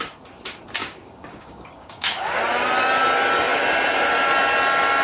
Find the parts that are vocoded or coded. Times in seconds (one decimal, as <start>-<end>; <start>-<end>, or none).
0.8-2.4

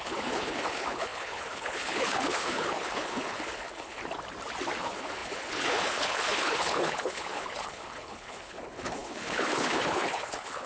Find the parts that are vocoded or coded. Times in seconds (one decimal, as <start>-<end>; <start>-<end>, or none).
0.0-4.0; 4.8-10.7

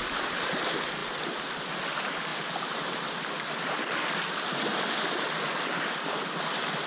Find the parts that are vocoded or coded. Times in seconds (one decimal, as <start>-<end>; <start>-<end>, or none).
none

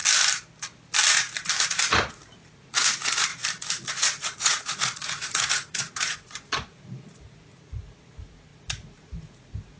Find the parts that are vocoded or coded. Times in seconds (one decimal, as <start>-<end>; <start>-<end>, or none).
2.1-3.3; 3.9-9.8